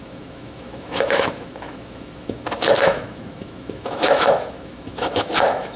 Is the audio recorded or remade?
remade